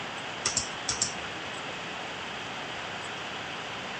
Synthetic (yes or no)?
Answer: no